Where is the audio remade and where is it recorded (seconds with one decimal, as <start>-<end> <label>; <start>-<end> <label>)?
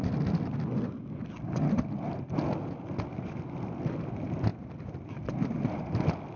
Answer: 0.0-4.5 recorded; 4.5-5.1 remade; 5.1-6.4 recorded